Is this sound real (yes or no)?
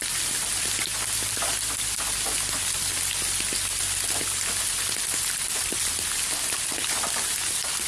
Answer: yes